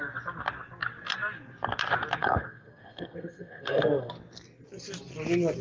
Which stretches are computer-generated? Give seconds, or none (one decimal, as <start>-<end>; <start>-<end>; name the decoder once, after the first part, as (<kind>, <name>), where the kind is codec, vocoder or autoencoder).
2.2-4.1 (codec, SNAC)